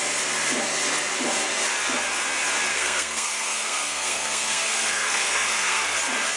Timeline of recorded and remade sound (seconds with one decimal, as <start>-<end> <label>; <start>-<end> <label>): 0.0-2.7 recorded; 2.7-6.0 remade; 6.0-6.4 recorded